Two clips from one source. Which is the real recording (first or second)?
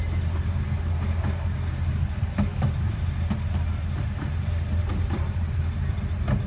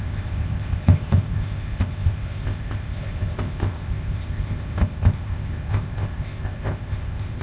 first